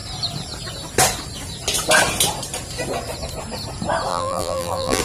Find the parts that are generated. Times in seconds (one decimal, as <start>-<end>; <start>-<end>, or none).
4.1-5.0